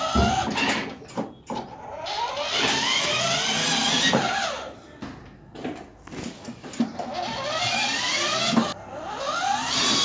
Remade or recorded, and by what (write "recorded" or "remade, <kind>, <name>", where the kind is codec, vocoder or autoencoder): recorded